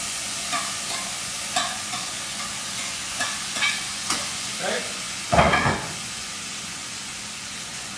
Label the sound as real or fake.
fake